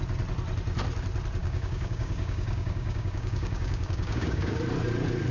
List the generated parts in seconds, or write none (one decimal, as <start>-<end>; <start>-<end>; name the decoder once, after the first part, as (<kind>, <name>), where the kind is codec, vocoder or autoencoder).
1.4-4.6 (codec, DAC)